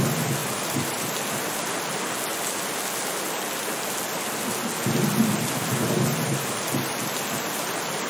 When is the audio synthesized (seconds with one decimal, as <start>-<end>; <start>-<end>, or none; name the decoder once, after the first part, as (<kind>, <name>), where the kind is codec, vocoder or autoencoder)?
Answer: 0.4-1.1 (vocoder, BigVGAN v2)